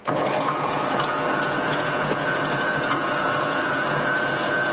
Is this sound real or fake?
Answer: fake